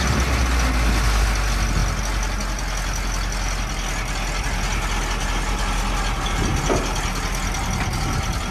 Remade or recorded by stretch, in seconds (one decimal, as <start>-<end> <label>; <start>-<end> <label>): 0.0-8.5 recorded